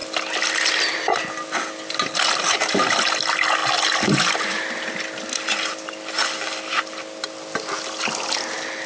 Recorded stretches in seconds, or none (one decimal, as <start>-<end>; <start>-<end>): 0.0-8.9

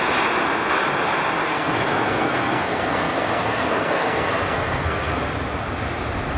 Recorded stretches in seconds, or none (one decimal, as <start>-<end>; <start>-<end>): 0.0-1.4; 5.2-6.4

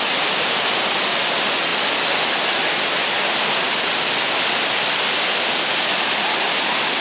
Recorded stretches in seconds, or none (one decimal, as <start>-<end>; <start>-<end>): 0.0-7.0

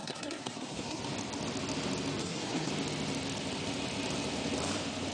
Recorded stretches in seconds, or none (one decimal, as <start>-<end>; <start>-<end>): 1.0-2.2; 2.7-5.1